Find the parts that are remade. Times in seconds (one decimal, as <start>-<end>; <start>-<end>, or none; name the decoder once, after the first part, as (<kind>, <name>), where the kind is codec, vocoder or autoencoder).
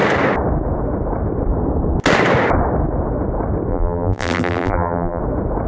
3.7-5.2 (vocoder, BigVGAN v2)